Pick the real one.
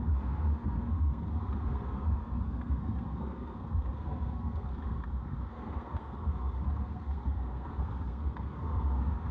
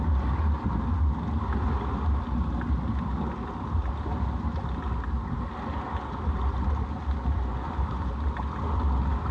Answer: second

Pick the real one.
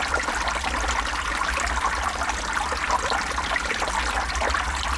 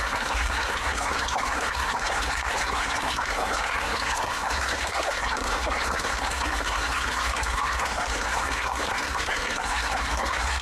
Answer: first